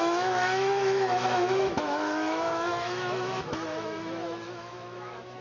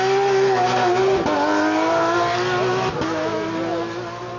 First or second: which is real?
second